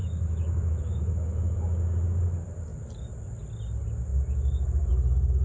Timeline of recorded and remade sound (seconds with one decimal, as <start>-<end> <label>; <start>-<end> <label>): 0.0-1.0 remade; 1.0-4.1 recorded; 4.1-4.9 remade; 4.9-5.4 recorded

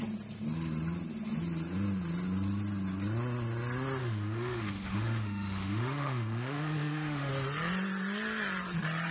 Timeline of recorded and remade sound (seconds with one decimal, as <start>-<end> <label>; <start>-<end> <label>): 0.0-4.0 recorded; 4.0-7.3 remade; 7.3-9.1 recorded

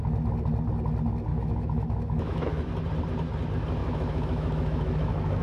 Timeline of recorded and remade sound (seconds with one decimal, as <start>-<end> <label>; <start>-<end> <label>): 0.0-1.3 recorded; 1.3-2.7 remade; 2.7-3.8 recorded; 3.8-5.4 remade

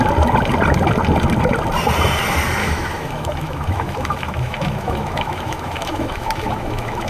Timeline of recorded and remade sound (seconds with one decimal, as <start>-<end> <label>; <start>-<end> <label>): 0.0-2.6 recorded; 2.6-7.1 remade

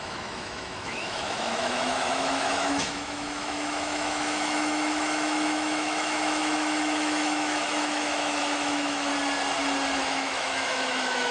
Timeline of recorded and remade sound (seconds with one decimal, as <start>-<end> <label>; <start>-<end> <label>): 0.0-9.1 remade; 9.1-10.0 recorded; 10.0-11.3 remade